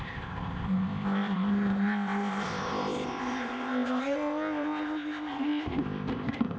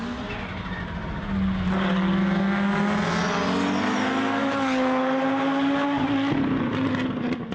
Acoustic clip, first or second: second